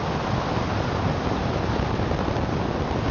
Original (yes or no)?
yes